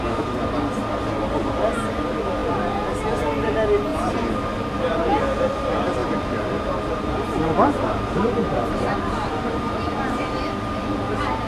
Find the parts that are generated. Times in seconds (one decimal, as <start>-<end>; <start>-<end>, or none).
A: 3.9-5.4; 6.0-9.6

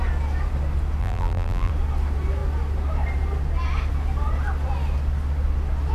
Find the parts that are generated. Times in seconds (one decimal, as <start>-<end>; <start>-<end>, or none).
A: 1.0-1.7

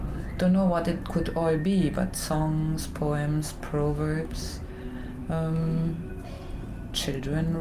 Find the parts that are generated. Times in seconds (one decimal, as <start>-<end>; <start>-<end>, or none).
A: 3.7-4.4; 5.2-6.1